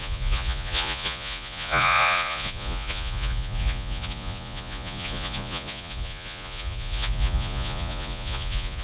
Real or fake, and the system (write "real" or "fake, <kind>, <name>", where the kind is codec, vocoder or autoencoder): fake, vocoder, Vocos